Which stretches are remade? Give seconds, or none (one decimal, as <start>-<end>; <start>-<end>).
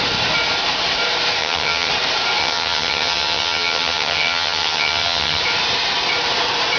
1.4-1.9; 2.4-5.4